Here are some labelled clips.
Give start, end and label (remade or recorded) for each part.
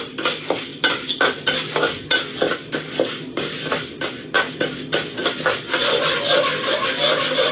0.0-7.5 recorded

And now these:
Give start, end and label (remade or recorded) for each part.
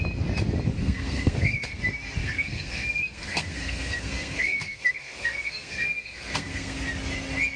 0.0-0.8 recorded; 0.8-1.8 remade; 1.8-2.2 recorded; 2.2-6.8 remade; 6.8-7.6 recorded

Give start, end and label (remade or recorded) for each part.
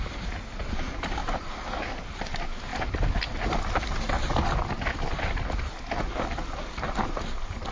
0.0-1.2 recorded; 1.2-1.8 remade; 1.8-7.7 recorded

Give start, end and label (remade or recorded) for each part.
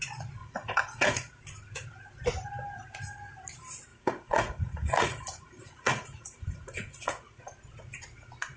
0.0-0.4 recorded; 0.4-1.4 remade; 1.4-3.9 recorded; 3.9-7.4 remade; 7.4-8.6 recorded